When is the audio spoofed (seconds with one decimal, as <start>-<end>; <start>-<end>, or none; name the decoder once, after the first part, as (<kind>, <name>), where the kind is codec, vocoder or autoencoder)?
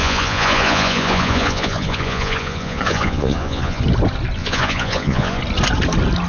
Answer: 0.0-3.8 (vocoder, Vocos); 4.4-5.4